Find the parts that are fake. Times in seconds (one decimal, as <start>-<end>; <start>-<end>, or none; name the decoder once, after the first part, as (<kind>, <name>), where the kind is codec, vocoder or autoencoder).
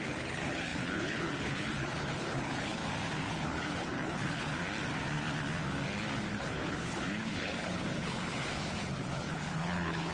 0.0-2.8 (codec, HILCodec); 3.3-4.5; 6.4-10.1